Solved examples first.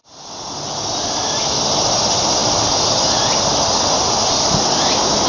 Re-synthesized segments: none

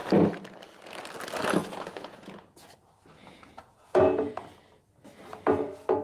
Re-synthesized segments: 1.6-2.8; 3.2-4.3

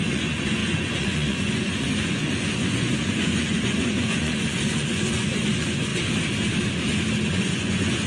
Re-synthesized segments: 0.0-5.9; 7.3-8.1

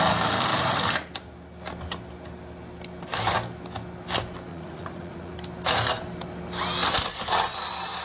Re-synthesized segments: 4.5-5.3